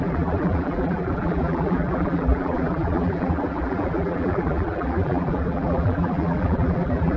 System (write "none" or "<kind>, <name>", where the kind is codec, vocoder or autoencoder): vocoder, BigVGAN v2